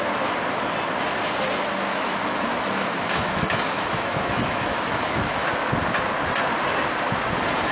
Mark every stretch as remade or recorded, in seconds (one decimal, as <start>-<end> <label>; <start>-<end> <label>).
0.0-1.9 recorded; 1.9-5.5 remade; 5.5-7.7 recorded